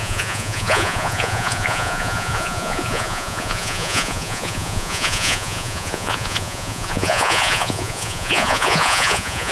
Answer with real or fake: fake